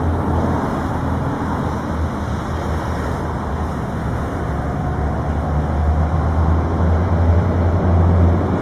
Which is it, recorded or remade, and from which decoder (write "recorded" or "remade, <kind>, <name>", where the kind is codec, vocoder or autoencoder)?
recorded